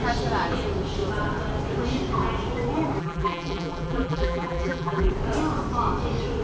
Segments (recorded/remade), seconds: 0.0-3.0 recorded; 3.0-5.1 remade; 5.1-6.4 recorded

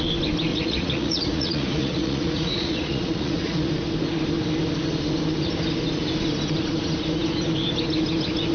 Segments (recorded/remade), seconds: 0.0-0.5 recorded; 0.5-3.7 remade; 3.7-8.5 recorded